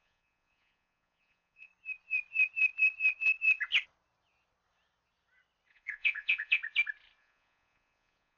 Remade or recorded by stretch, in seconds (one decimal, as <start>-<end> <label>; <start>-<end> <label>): 0.0-1.7 remade; 1.7-5.7 recorded; 5.7-6.6 remade; 6.6-7.2 recorded; 7.2-8.4 remade